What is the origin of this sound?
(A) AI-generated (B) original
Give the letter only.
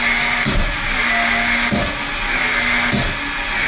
B